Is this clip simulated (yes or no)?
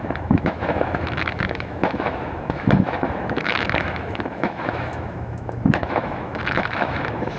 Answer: yes